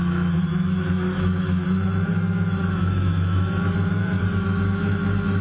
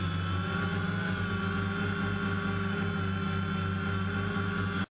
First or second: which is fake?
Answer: first